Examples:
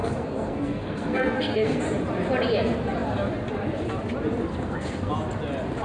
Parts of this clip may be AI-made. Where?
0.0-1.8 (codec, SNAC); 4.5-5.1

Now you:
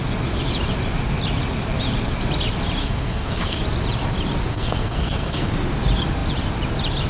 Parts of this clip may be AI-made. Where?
2.8-3.6 (codec, SNAC); 4.5-5.5